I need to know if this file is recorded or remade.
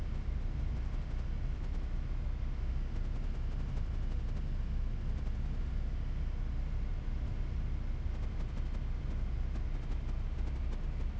recorded